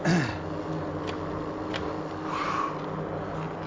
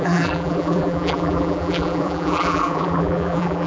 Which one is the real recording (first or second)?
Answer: first